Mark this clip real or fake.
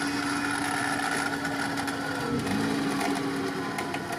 real